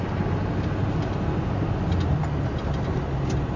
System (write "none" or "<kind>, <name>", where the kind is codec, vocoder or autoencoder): none